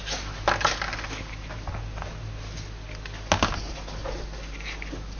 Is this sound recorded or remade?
recorded